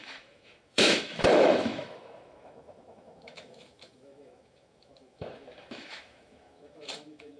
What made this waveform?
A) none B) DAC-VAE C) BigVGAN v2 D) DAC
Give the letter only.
B